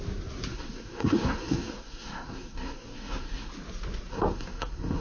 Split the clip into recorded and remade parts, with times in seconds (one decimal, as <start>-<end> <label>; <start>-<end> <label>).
0.0-0.5 recorded; 0.5-3.5 remade; 3.5-4.1 recorded; 4.1-5.0 remade